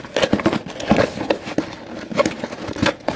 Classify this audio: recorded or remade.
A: recorded